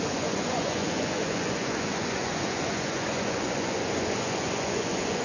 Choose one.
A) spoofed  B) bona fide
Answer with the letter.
A